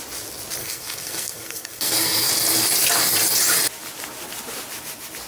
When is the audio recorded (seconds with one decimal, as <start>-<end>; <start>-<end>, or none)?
0.0-0.6; 2.3-5.3